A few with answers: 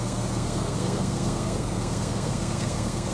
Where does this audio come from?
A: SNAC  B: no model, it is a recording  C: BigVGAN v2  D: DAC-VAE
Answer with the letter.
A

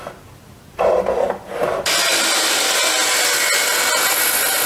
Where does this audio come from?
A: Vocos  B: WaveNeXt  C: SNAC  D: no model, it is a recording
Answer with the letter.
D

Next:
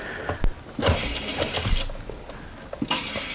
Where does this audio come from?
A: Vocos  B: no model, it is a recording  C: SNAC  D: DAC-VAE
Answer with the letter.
B